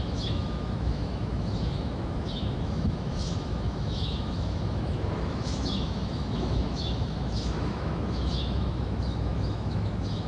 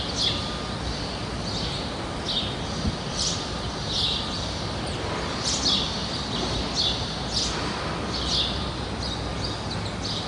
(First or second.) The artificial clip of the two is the first